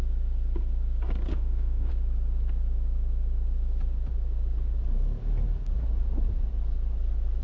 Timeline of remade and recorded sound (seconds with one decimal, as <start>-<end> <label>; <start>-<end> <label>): 0.0-1.3 recorded; 1.3-1.9 remade; 1.9-7.4 recorded